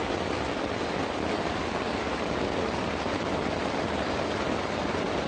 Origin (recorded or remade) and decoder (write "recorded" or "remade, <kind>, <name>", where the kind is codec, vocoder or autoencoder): recorded